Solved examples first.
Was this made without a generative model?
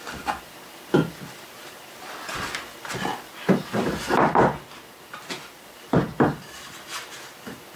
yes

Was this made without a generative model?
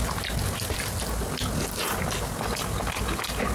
yes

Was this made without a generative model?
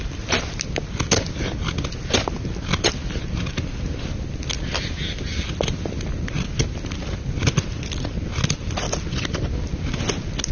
yes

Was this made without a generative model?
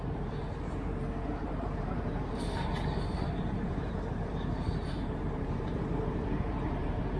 no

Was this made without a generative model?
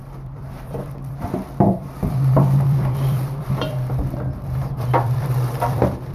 no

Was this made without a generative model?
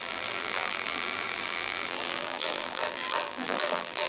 no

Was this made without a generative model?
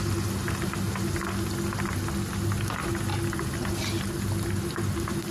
yes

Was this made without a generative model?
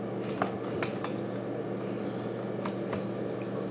yes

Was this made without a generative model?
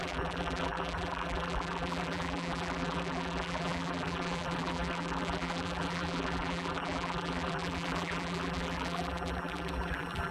no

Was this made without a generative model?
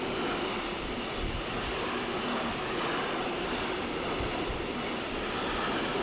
yes